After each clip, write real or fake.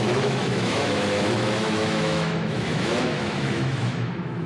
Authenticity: fake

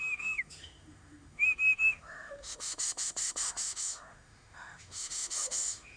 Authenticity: fake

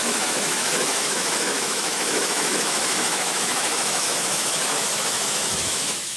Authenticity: fake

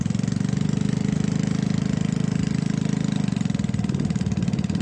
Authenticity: real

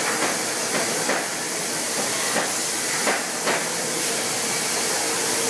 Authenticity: real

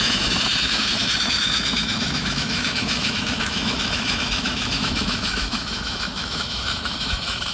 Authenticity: fake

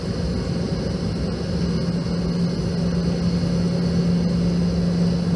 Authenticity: real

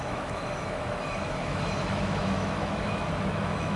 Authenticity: fake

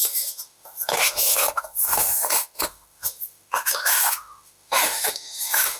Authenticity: fake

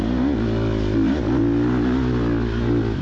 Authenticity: real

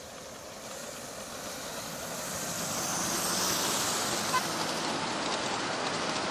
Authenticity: real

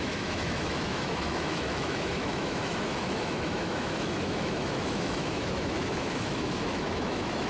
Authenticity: fake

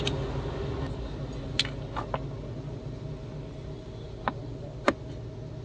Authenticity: real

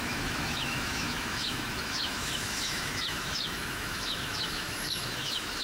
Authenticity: fake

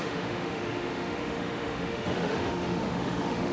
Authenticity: fake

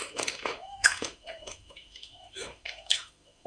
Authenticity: fake